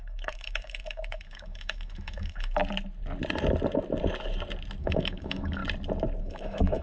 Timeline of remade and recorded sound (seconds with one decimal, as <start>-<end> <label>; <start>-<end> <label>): 0.0-2.6 remade; 2.6-4.8 recorded; 4.8-5.6 remade; 5.6-6.2 recorded; 6.2-6.8 remade